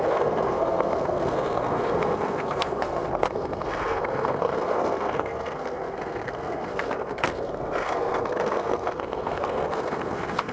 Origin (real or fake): fake